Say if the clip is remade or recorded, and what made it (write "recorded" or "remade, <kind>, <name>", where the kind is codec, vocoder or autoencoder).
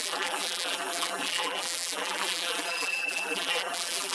remade, vocoder, BigVGAN v2